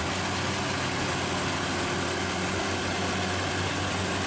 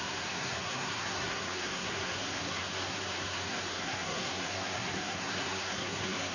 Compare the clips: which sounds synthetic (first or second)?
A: second